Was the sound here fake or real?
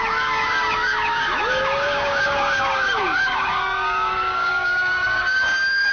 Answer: fake